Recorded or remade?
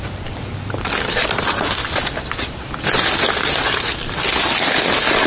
recorded